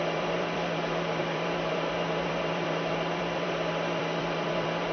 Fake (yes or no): yes